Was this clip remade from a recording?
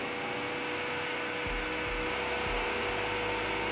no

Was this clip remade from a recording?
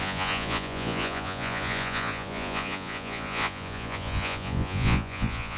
yes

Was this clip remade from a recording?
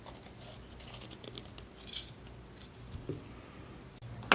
no